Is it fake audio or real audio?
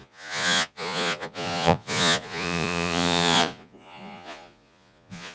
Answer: fake